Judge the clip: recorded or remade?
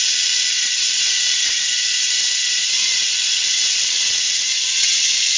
remade